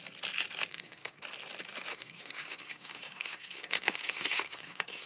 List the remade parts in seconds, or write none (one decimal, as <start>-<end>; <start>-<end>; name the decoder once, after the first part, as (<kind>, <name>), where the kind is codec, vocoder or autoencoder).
0.7-1.2 (codec, SNAC); 1.9-5.1